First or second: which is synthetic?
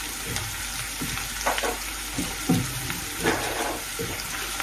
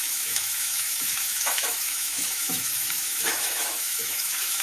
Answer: second